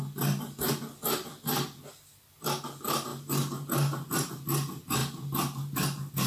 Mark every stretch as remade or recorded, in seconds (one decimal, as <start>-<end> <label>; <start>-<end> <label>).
0.0-6.3 recorded